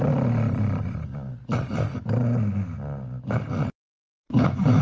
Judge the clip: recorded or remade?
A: recorded